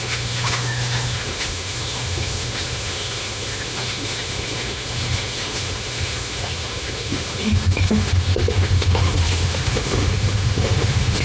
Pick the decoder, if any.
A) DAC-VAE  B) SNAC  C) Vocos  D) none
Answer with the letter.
A